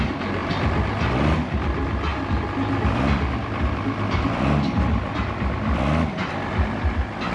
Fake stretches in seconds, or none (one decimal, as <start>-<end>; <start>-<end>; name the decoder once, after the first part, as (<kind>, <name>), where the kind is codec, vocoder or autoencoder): 0.4-1.0 (vocoder, BigVGAN v2); 2.1-6.5